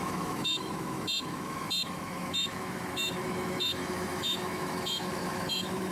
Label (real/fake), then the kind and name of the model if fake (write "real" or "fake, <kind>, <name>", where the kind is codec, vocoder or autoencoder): fake, autoencoder, DAC-VAE